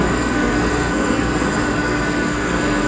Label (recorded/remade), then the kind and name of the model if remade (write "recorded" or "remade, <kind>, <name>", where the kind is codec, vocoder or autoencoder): remade, codec, SNAC